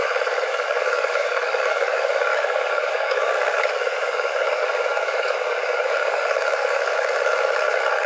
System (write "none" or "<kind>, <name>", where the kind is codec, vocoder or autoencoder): codec, DAC